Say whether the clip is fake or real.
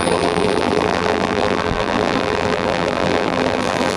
fake